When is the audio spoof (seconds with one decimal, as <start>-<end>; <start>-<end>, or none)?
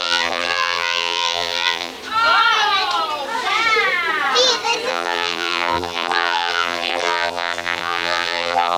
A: 0.0-1.9; 4.9-8.8